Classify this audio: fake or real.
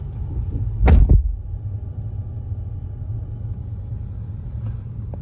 real